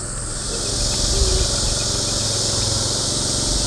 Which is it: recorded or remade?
recorded